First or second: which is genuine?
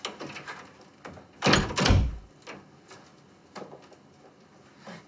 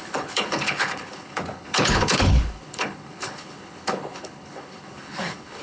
first